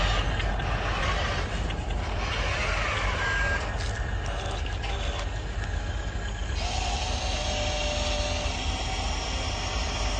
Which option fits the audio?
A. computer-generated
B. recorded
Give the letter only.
B